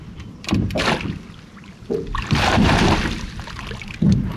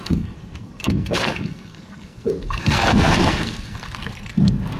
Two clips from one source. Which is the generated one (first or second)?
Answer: second